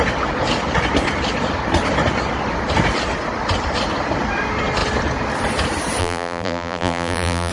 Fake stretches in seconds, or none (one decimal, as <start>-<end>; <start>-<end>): 6.0-7.5